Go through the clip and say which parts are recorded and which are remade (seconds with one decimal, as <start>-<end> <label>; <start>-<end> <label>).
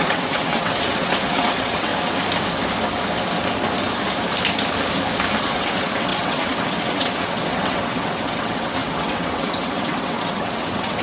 0.0-1.9 remade; 1.9-5.4 recorded; 5.4-11.0 remade